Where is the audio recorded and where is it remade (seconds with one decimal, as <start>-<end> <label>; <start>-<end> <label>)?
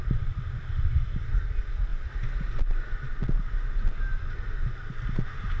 0.0-5.6 recorded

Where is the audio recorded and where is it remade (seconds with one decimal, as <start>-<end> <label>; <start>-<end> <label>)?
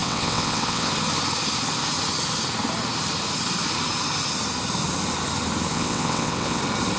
0.0-0.9 remade; 0.9-5.7 recorded; 5.7-6.6 remade; 6.6-7.0 recorded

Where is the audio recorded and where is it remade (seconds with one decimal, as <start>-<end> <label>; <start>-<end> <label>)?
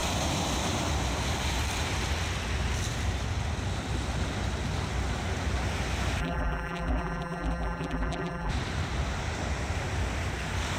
0.0-6.2 recorded; 6.2-8.5 remade; 8.5-10.8 recorded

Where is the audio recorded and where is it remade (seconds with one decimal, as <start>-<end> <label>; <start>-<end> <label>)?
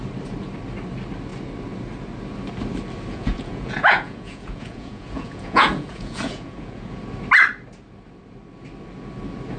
0.0-3.1 recorded; 3.1-7.0 remade; 7.0-9.6 recorded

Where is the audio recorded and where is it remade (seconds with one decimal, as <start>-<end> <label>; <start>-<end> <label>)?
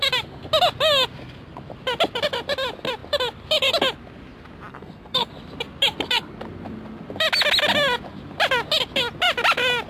0.0-4.7 recorded; 4.7-5.3 remade; 5.3-9.9 recorded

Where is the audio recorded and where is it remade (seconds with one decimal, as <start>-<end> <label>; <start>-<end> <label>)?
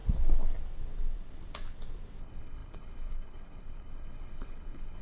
0.0-2.2 recorded; 2.2-5.0 remade